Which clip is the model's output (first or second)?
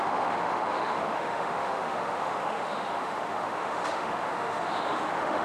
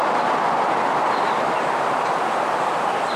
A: first